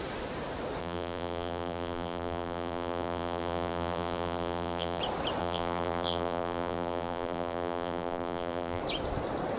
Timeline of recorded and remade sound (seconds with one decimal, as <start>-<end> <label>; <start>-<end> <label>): 0.0-0.8 recorded; 0.8-5.0 remade; 5.0-5.4 recorded; 5.4-8.8 remade; 8.8-9.6 recorded